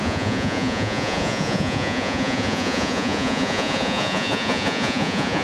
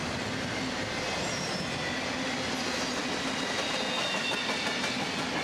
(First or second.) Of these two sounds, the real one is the second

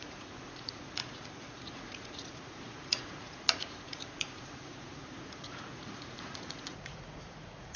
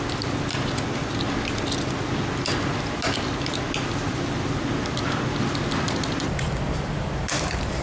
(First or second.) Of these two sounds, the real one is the second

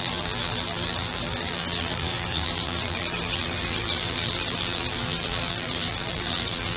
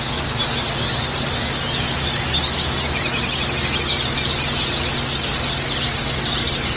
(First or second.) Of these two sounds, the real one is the second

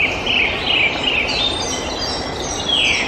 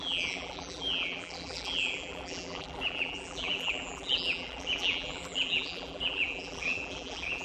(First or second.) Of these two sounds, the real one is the first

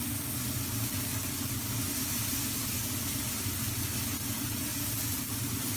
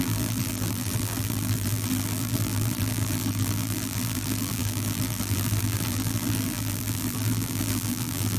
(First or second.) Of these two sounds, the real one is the first